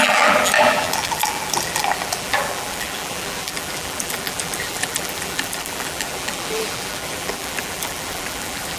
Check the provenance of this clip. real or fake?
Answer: fake